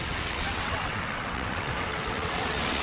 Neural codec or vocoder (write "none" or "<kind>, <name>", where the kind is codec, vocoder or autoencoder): vocoder, WaveNeXt